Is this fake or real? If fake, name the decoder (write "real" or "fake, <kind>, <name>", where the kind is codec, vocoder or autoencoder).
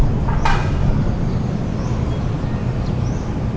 real